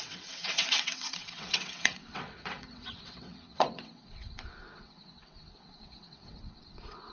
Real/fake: fake